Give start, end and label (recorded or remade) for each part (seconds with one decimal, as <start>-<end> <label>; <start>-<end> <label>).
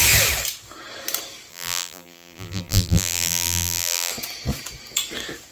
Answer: 0.0-1.5 recorded; 1.5-4.1 remade; 4.1-5.5 recorded